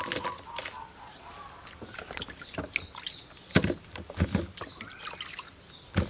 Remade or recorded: recorded